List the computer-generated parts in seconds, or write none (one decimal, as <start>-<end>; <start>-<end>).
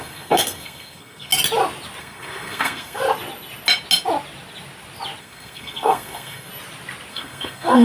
0.0-1.3; 2.0-3.0; 5.2-6.5; 7.1-7.8